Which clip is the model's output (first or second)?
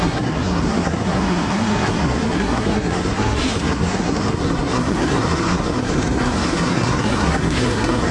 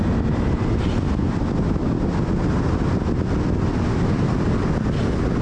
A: first